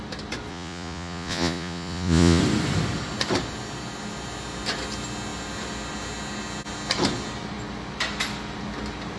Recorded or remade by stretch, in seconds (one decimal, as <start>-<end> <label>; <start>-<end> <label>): 0.0-0.5 recorded; 0.5-2.4 remade; 2.4-9.2 recorded